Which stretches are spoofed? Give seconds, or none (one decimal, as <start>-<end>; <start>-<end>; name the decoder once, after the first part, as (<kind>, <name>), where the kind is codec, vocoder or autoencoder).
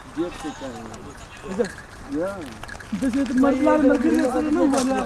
none